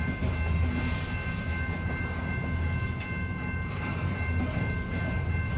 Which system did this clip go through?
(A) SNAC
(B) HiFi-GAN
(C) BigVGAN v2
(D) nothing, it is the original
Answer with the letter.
D